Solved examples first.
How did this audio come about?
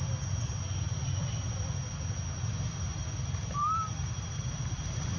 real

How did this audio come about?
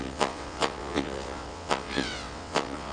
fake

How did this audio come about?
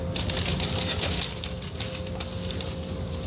real